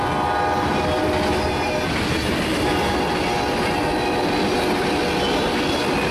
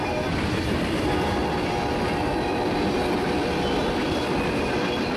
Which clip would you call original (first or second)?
first